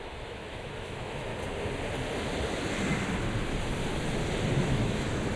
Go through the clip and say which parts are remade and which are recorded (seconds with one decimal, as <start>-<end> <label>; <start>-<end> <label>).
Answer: 0.0-1.3 remade; 1.3-4.5 recorded; 4.5-5.4 remade